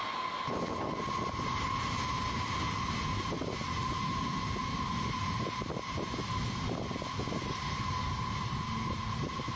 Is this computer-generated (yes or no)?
no